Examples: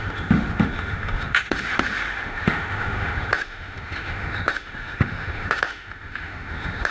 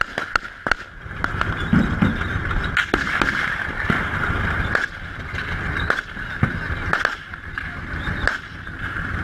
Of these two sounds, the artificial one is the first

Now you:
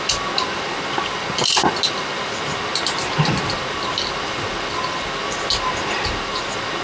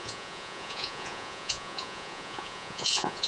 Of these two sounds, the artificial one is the second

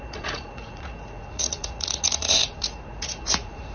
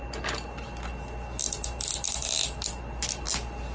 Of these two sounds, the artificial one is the first